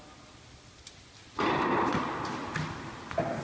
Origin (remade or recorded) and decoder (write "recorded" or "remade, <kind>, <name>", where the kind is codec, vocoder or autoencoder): recorded